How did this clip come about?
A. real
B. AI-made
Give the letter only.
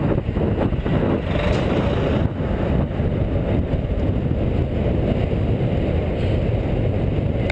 A